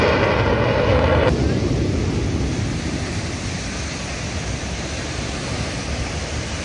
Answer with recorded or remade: recorded